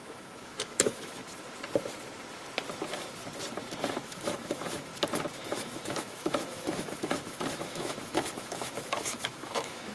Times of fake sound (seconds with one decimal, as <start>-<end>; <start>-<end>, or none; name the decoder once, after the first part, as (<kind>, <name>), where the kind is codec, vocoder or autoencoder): 0.0-1.2 (autoencoder, DAC-VAE); 4.0-4.9; 5.5-9.9